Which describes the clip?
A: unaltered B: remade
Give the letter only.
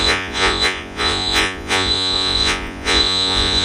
B